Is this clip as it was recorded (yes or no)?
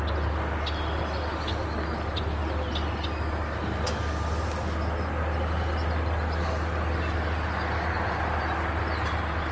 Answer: yes